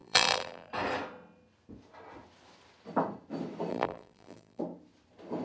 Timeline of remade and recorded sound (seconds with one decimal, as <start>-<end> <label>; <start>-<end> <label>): 0.0-0.7 remade; 0.7-3.7 recorded; 3.7-4.6 remade; 4.6-5.4 recorded

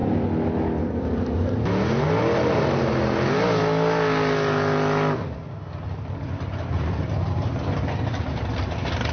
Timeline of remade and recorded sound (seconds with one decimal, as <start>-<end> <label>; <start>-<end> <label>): 0.0-6.5 recorded; 6.5-7.4 remade; 7.4-9.1 recorded

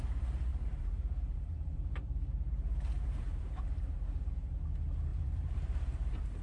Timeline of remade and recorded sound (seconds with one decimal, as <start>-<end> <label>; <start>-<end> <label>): 0.0-0.5 recorded; 0.5-4.3 remade; 4.3-5.1 recorded; 5.1-6.4 remade

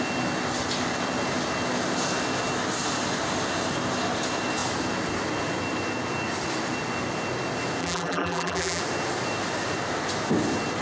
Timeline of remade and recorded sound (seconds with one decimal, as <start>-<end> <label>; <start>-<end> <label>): 0.0-7.8 recorded; 7.8-8.8 remade; 8.8-10.8 recorded

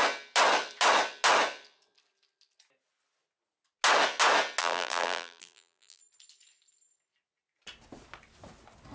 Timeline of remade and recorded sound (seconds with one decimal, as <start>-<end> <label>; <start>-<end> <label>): 0.0-4.6 recorded; 4.6-6.0 remade; 6.0-8.9 recorded

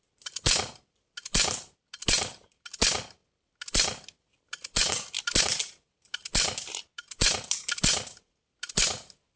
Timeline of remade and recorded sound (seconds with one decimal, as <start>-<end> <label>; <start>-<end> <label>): 0.0-9.4 recorded

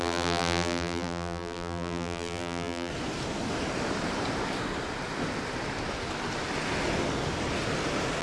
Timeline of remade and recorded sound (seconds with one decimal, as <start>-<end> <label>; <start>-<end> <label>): 0.0-2.9 remade; 2.9-8.2 recorded